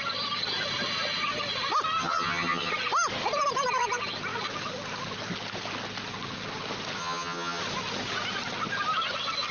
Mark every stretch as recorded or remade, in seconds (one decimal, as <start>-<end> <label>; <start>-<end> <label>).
0.0-2.0 recorded; 2.0-2.7 remade; 2.7-7.0 recorded; 7.0-7.6 remade; 7.6-9.5 recorded